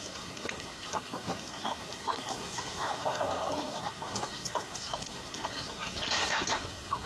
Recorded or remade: remade